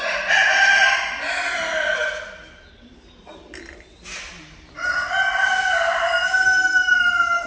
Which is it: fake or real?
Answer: real